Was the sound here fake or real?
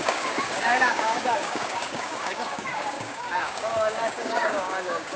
fake